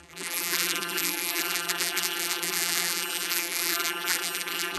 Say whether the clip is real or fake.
fake